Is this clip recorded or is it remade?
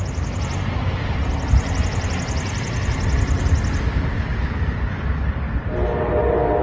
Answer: recorded